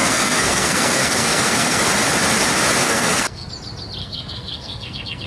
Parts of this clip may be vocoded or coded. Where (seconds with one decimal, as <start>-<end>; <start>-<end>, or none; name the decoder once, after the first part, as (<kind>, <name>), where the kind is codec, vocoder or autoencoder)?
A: 0.0-1.9 (codec, SNAC); 2.8-3.5; 4.0-5.3